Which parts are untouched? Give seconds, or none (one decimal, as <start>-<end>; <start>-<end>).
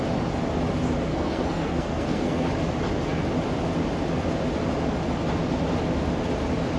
0.0-1.1; 2.5-6.8